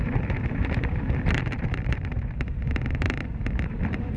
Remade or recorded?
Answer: remade